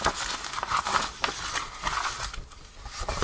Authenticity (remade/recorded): recorded